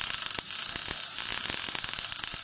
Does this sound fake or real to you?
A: real